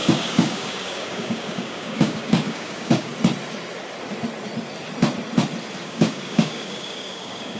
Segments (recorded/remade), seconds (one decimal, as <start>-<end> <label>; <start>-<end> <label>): 0.0-3.1 remade; 3.1-5.8 recorded; 5.8-7.6 remade